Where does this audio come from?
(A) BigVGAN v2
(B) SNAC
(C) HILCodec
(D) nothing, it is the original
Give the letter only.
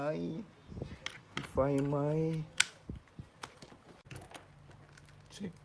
D